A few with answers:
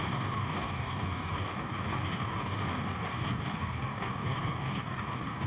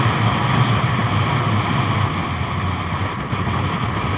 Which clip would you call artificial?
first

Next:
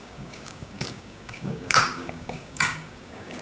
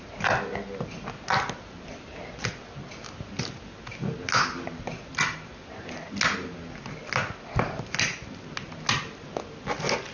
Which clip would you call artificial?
first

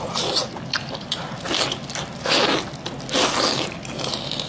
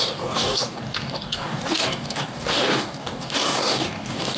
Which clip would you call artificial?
second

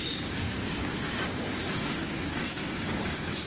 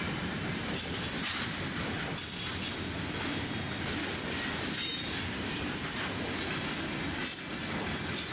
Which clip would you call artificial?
first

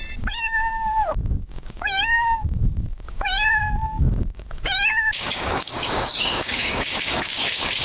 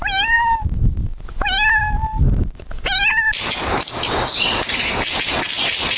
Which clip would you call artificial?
first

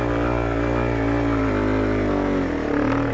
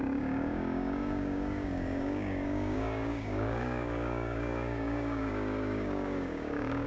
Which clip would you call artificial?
second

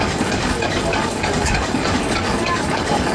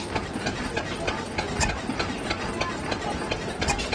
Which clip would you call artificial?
first